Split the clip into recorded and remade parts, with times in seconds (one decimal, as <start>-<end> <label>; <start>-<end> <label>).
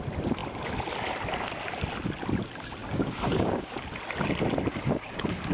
0.0-2.8 recorded; 2.8-3.9 remade; 3.9-4.7 recorded; 4.7-5.5 remade